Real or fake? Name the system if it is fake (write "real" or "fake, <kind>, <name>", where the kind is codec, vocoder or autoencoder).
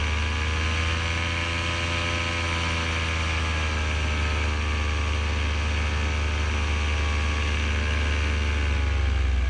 real